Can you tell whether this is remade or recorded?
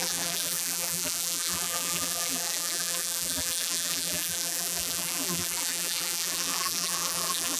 remade